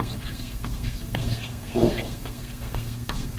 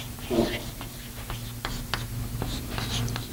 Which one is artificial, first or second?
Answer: first